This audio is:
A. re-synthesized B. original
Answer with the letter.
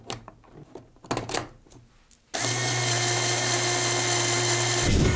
B